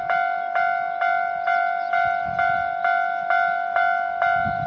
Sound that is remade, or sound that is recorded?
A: recorded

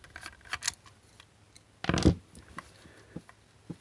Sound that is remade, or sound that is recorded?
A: recorded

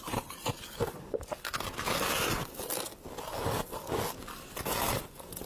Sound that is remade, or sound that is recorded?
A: recorded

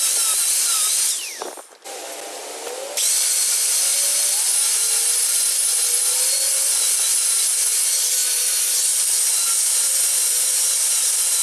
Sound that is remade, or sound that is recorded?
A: recorded